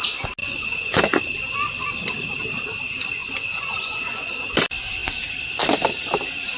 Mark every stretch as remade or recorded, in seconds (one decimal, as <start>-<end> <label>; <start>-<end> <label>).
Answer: 0.0-0.4 recorded; 0.4-1.0 remade; 1.0-3.2 recorded; 3.2-4.3 remade; 4.3-6.6 recorded